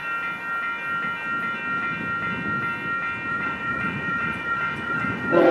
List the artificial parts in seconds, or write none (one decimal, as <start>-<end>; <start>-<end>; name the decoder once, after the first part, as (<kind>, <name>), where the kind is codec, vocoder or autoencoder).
3.3-5.5 (vocoder, Vocos)